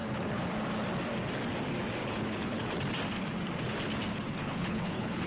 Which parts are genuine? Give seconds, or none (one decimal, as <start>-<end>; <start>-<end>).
0.5-2.0; 2.8-4.1